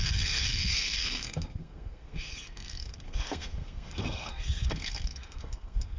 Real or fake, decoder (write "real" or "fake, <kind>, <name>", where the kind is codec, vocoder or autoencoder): fake, codec, SNAC